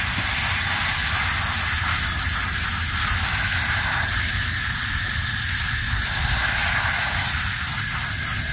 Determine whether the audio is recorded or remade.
recorded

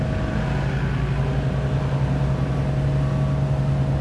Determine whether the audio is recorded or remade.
recorded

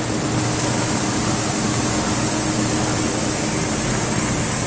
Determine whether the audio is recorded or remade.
recorded